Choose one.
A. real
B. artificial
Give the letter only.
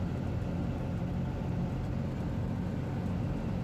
A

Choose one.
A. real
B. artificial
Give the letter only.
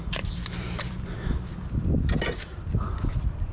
B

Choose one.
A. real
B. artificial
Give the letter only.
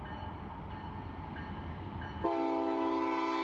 A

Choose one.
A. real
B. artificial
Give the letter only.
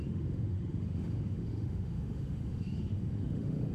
B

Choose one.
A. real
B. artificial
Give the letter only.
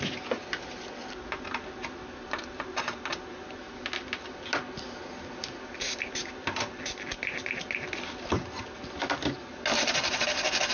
A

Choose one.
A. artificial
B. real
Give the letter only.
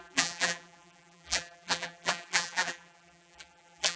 A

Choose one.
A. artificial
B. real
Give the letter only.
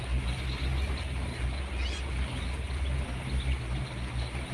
B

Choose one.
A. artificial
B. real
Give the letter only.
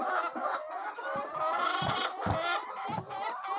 B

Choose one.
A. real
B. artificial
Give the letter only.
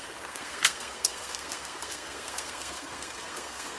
B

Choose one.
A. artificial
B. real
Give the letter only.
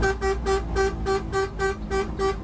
B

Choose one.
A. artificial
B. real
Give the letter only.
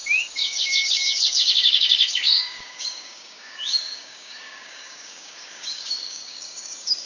A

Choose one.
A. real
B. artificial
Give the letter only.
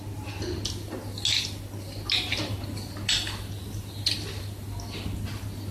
A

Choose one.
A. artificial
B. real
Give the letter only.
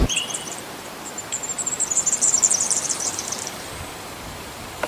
A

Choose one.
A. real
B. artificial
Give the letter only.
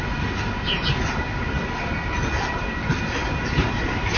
A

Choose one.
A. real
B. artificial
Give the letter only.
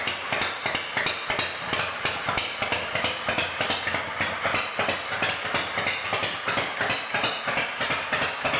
A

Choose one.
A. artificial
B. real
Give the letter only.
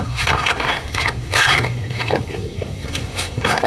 A